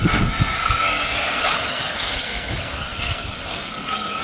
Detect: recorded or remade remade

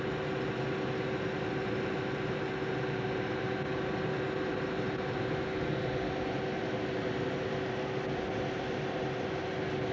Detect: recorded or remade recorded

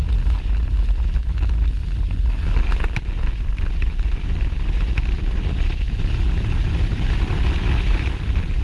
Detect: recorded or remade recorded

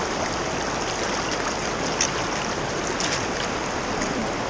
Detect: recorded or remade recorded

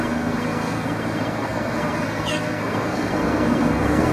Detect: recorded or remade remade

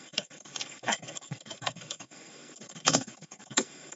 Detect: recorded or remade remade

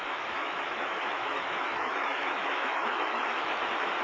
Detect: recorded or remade remade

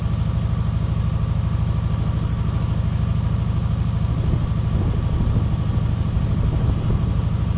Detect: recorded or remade recorded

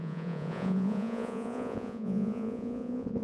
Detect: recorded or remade remade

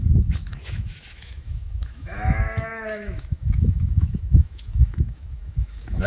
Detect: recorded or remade remade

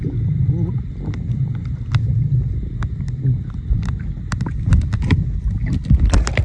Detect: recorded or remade recorded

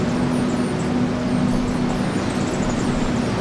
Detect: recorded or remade recorded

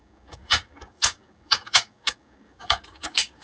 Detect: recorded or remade remade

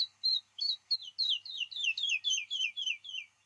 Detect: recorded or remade recorded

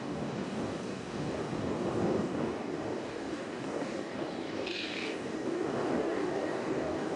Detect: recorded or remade remade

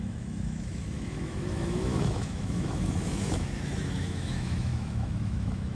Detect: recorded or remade remade